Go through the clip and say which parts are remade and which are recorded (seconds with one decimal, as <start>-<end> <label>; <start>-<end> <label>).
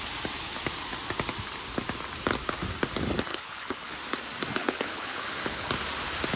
0.0-3.3 recorded; 3.3-3.9 remade; 3.9-4.6 recorded; 4.6-5.7 remade; 5.7-6.4 recorded